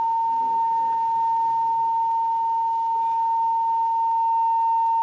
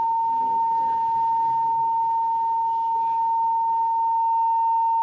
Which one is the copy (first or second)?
second